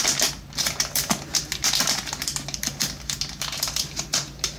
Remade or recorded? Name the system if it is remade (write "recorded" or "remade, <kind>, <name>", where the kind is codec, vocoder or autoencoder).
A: recorded